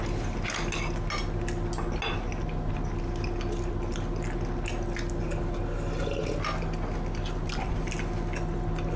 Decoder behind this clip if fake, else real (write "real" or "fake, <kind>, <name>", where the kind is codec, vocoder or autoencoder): real